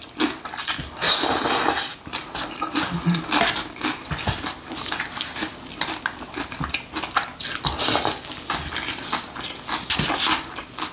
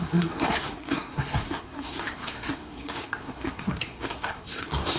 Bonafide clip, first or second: first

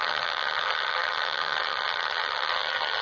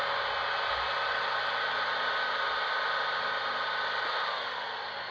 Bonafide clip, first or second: second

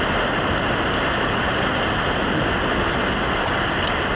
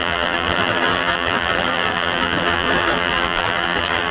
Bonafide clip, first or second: first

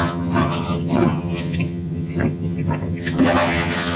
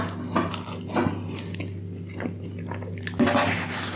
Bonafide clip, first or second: second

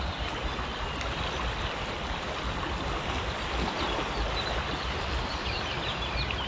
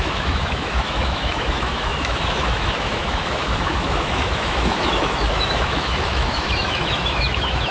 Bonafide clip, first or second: first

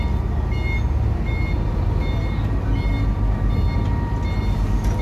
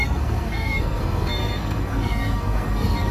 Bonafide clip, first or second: first